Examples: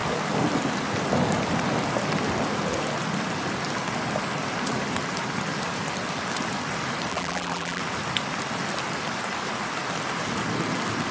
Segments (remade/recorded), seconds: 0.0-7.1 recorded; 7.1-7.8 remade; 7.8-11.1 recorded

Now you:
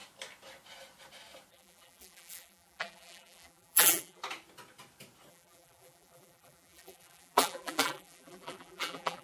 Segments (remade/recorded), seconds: 0.0-1.5 recorded; 1.5-4.2 remade; 4.2-5.3 recorded; 5.3-9.2 remade

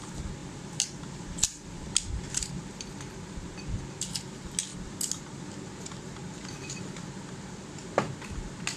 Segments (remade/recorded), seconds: 0.0-0.4 recorded; 0.4-2.6 remade; 2.6-4.7 recorded; 4.7-5.7 remade; 5.7-8.8 recorded

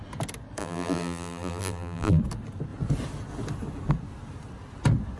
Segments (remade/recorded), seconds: 0.0-0.6 recorded; 0.6-2.2 remade; 2.2-5.2 recorded

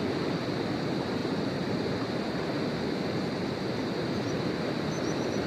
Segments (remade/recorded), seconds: 0.0-5.5 recorded

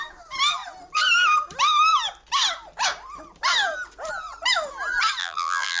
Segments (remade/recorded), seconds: 0.0-5.2 recorded; 5.2-5.8 remade